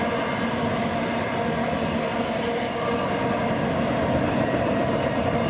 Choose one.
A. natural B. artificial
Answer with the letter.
A